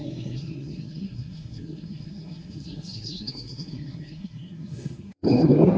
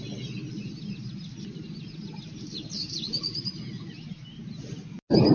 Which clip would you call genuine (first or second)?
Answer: second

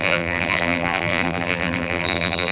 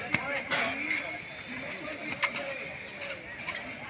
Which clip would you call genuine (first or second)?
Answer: second